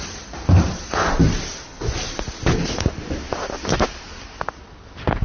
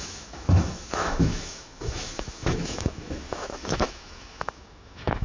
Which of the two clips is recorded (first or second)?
first